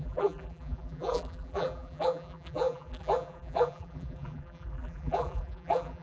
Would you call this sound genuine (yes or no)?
no